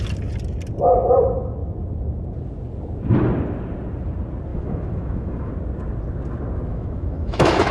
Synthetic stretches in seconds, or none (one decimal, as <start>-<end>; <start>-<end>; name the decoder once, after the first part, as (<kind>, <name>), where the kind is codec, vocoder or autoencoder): 4.5-5.5 (autoencoder, DAC-VAE); 6.7-7.7